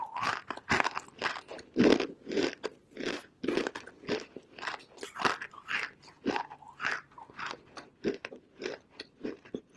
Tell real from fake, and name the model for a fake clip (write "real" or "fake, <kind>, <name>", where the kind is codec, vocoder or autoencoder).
real